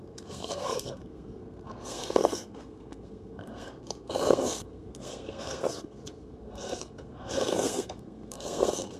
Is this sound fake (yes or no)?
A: yes